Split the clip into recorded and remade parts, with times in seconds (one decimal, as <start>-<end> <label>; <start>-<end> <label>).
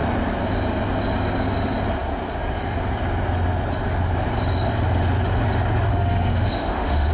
0.0-5.9 recorded; 5.9-7.1 remade